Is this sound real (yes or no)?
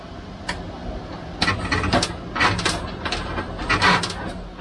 yes